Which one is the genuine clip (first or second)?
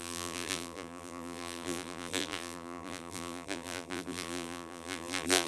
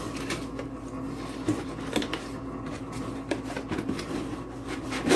second